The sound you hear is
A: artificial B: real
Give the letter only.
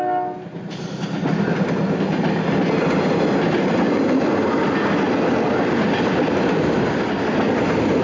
B